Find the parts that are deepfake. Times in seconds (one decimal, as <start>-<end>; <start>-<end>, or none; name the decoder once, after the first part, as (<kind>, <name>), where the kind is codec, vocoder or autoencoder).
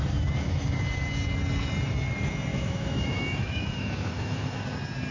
2.5-4.6 (autoencoder, DAC-VAE)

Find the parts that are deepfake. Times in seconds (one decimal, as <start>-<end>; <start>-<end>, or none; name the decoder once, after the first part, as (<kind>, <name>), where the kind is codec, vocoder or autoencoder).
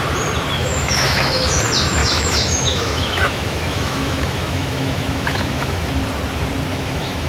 0.6-1.6 (autoencoder, DAC-VAE); 2.0-5.9; 6.7-7.3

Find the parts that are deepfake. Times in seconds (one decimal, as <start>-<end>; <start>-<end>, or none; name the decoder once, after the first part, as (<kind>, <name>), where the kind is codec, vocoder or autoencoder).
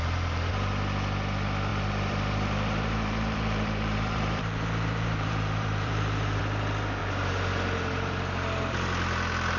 0.0-0.5 (vocoder, BigVGAN v2); 1.7-6.4; 7.0-8.3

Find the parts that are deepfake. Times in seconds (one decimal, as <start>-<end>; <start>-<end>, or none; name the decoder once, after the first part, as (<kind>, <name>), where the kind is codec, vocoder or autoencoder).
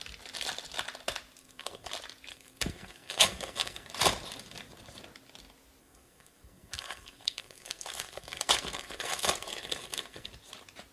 1.4-1.9 (codec, SNAC); 2.3-3.9; 5.8-10.3